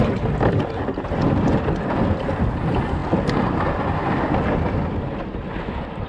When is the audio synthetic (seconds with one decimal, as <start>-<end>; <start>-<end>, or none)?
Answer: none